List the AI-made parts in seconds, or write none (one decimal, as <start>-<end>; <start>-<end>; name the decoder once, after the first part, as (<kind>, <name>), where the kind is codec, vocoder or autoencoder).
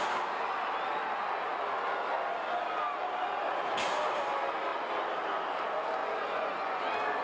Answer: 6.0-6.8 (vocoder, Vocos)